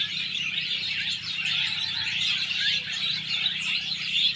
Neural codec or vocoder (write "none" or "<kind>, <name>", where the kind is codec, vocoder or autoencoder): none